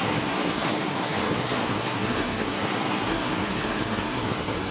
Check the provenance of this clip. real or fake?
fake